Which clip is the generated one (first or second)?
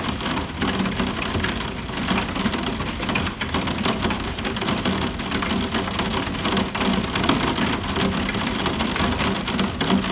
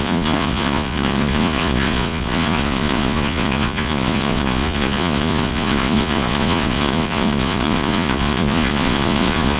second